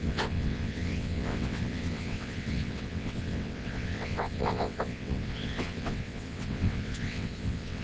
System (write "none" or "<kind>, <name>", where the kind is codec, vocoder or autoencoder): vocoder, WaveNeXt